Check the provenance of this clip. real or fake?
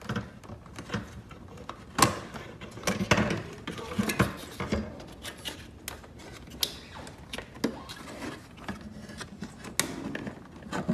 real